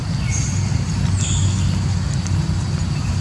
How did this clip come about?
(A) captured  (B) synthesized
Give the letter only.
A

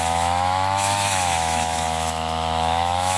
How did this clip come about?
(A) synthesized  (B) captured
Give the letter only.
A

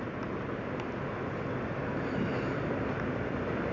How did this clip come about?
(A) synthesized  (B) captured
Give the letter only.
B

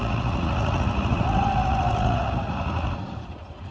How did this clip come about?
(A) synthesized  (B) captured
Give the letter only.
A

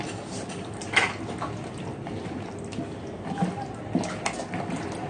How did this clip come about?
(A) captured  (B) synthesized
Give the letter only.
A